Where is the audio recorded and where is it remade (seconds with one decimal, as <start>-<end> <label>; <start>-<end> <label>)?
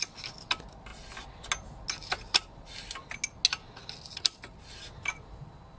0.0-5.8 recorded